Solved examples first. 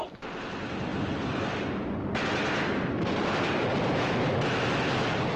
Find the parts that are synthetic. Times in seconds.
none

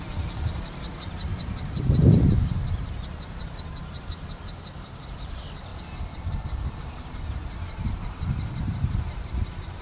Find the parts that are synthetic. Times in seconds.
1.3-4.0; 5.7-6.7

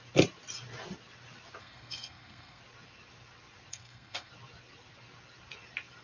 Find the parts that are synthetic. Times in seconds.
1.6-2.6; 3.7-4.3

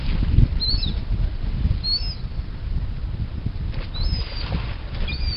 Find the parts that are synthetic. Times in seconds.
none

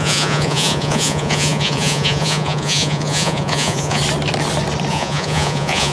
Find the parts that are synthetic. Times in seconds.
0.0-4.0; 4.9-5.9

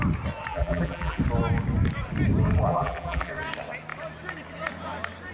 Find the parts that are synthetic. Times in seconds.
0.5-1.2; 2.7-3.3

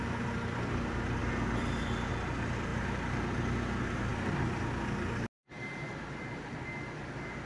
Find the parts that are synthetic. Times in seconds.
2.7-3.2

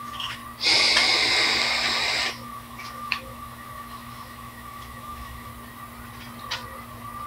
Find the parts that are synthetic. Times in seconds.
0.0-0.4; 2.3-5.5